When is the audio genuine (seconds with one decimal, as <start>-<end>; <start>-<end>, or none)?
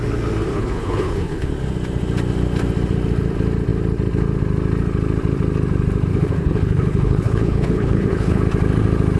0.0-0.5; 1.5-6.1; 8.4-9.2